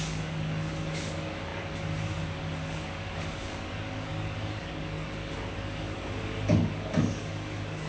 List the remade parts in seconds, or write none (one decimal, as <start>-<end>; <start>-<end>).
0.0-7.9